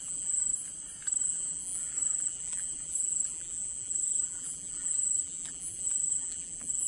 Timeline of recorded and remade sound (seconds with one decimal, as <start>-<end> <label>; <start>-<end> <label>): 0.0-0.5 remade; 0.5-1.2 recorded; 1.2-6.9 remade